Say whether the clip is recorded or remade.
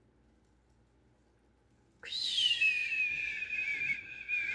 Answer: recorded